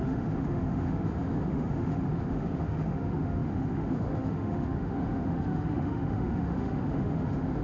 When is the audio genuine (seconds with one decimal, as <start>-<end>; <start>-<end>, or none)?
none